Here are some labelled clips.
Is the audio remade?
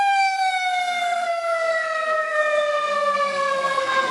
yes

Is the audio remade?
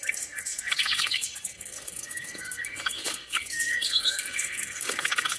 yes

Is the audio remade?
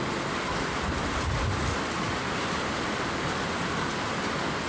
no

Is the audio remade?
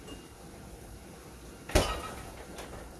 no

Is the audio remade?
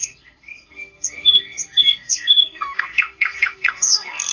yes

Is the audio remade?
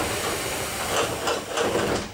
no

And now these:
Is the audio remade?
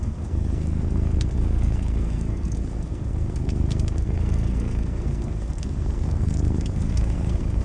yes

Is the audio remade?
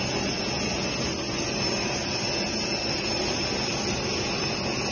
no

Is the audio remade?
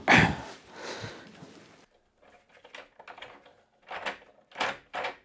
no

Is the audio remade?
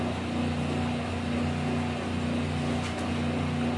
no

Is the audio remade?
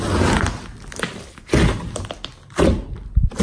no